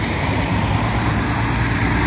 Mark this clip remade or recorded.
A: recorded